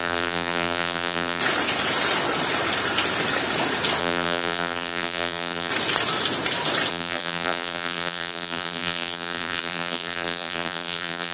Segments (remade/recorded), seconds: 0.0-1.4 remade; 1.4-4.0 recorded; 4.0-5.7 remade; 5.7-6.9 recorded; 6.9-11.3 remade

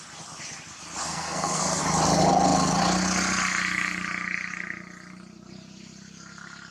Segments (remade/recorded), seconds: 0.0-1.0 recorded; 1.0-1.8 remade; 1.8-6.7 recorded